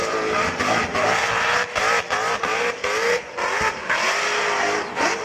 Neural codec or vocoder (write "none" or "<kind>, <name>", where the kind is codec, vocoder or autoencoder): none